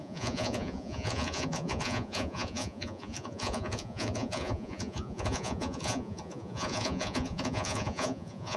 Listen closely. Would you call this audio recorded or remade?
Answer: remade